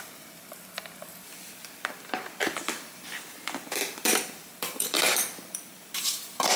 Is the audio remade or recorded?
remade